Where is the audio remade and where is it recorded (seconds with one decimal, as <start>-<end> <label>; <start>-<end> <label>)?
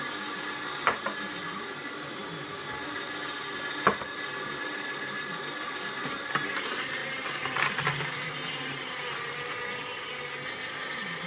0.0-11.3 recorded